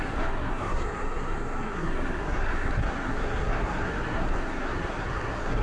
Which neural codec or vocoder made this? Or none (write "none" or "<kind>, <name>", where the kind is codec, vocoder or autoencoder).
codec, SNAC